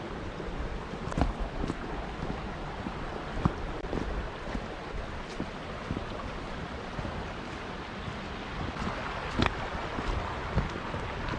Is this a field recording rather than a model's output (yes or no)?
yes